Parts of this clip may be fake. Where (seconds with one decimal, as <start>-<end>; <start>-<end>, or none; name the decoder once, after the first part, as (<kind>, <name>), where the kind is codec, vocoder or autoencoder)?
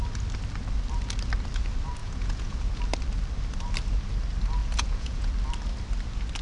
2.0-2.8 (vocoder, Vocos); 4.6-5.3